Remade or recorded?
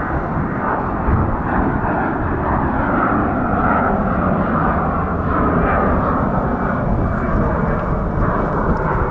recorded